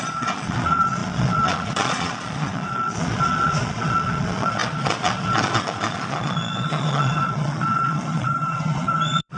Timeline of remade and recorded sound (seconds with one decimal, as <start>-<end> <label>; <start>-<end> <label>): 0.0-9.4 remade